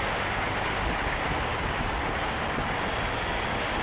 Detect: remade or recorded recorded